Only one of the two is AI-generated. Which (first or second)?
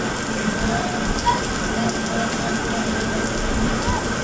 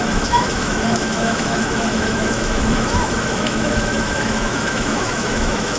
second